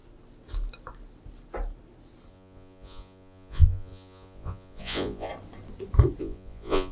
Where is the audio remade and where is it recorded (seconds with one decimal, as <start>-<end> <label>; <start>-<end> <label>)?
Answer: 0.0-2.3 recorded; 2.3-5.3 remade; 5.3-6.2 recorded; 6.2-6.9 remade